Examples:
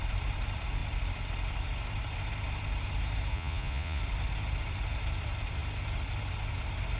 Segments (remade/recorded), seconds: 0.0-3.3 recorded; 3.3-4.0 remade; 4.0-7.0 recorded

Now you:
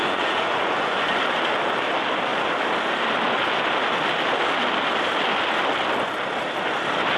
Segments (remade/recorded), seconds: 0.0-1.2 remade; 1.2-7.2 recorded

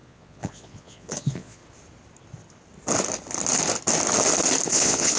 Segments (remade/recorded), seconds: 0.0-1.6 remade; 1.6-4.7 recorded; 4.7-5.2 remade

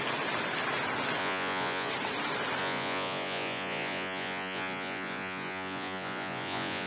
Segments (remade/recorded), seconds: 0.0-1.2 recorded; 1.2-1.9 remade; 1.9-2.6 recorded; 2.6-6.9 remade